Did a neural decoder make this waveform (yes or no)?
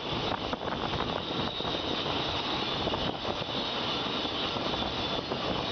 no